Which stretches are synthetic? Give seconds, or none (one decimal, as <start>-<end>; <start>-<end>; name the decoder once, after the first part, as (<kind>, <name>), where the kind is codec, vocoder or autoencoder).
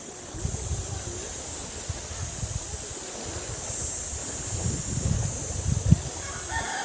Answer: none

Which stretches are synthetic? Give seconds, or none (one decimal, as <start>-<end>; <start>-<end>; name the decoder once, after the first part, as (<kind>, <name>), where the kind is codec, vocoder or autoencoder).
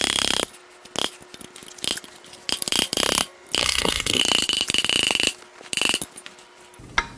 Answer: 3.6-4.2 (codec, SNAC)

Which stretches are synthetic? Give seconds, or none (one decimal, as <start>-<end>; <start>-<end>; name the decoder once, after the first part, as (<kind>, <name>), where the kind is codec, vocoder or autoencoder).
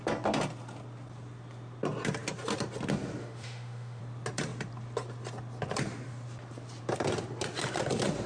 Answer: 3.2-4.0 (autoencoder, DAC-VAE)